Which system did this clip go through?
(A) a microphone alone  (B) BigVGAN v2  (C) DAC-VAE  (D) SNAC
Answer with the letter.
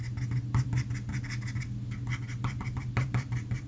A